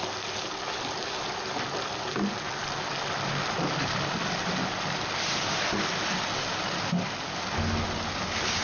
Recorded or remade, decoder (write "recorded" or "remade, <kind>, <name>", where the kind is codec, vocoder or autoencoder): recorded